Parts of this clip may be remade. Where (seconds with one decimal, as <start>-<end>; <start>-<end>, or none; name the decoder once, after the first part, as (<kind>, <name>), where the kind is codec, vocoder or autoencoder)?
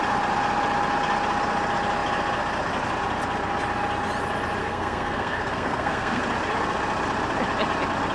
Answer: 4.6-6.2 (codec, SNAC)